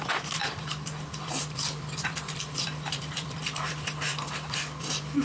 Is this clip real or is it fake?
fake